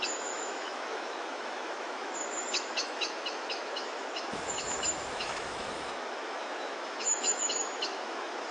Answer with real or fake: fake